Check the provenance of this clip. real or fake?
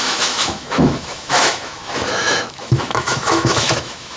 fake